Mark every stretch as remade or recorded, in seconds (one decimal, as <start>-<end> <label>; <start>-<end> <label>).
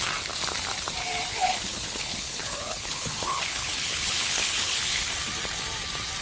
0.0-1.3 recorded; 1.3-5.0 remade; 5.0-6.2 recorded